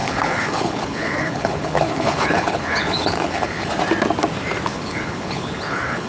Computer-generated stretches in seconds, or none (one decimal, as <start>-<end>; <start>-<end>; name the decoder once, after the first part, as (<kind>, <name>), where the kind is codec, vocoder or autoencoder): 0.0-3.7 (codec, HILCodec); 4.7-6.1